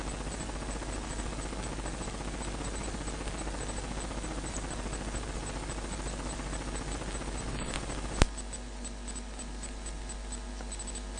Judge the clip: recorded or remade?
recorded